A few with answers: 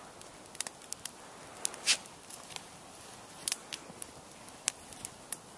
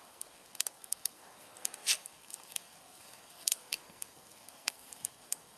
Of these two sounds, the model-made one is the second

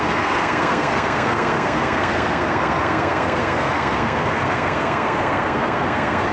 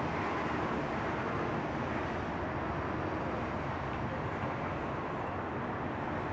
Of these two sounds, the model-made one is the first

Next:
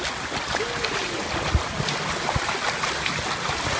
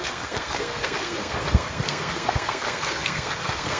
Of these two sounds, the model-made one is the second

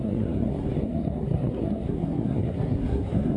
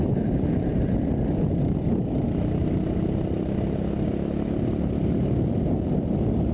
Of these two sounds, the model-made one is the first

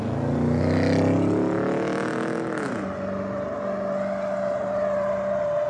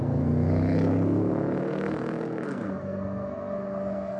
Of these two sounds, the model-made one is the second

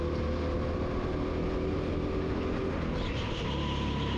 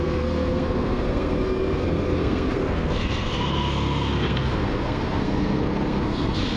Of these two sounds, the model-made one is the second